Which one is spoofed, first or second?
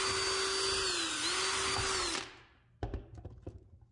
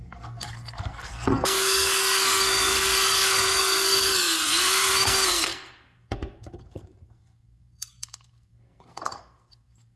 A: second